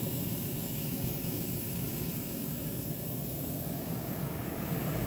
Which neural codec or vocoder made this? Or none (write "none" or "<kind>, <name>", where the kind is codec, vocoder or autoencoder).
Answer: codec, DAC